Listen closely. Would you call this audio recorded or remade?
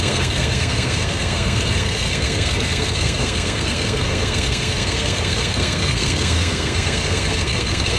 remade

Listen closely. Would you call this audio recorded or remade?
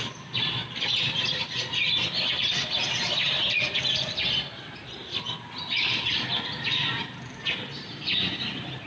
recorded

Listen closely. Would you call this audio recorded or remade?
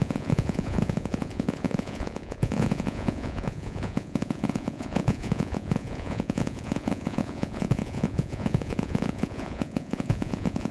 remade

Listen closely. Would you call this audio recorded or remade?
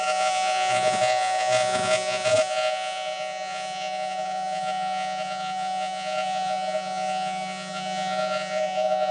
remade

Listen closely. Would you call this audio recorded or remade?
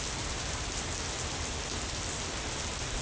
recorded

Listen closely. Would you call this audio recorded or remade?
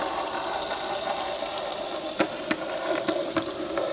recorded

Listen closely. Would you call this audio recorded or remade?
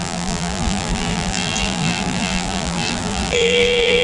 remade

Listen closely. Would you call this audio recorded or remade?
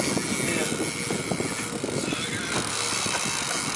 recorded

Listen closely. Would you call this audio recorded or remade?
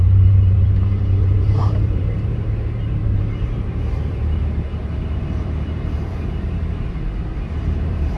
remade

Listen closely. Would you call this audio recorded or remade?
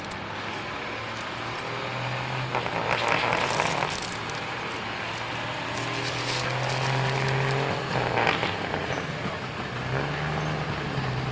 recorded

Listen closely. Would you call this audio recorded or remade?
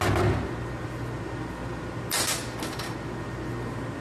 recorded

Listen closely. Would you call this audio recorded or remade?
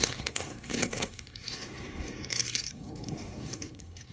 remade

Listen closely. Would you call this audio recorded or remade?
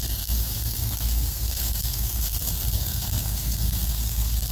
remade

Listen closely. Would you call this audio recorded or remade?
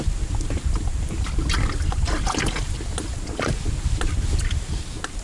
recorded